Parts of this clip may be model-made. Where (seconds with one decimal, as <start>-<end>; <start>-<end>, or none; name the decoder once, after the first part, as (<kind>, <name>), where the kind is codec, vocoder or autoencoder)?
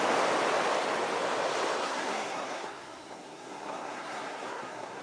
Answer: 1.8-5.0 (codec, SNAC)